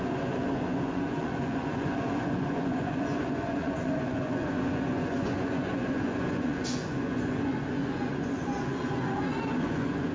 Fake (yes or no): yes